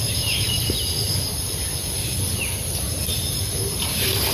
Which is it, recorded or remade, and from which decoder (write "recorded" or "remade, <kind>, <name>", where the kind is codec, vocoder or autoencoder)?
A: recorded